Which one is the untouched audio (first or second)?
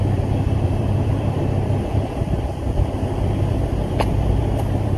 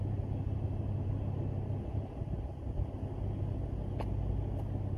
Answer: second